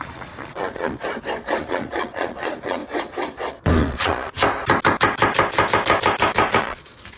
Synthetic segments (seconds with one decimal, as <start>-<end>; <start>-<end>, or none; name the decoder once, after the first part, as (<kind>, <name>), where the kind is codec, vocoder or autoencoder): 0.0-1.0 (vocoder, Vocos); 1.6-2.8; 3.5-4.4; 6.6-7.2